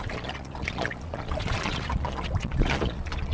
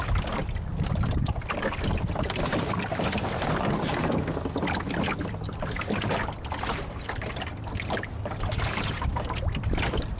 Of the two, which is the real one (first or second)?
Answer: second